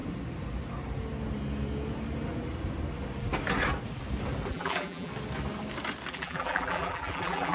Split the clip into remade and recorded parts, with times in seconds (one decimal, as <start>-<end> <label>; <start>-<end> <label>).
0.0-4.5 recorded; 4.5-5.1 remade; 5.1-6.1 recorded; 6.1-7.5 remade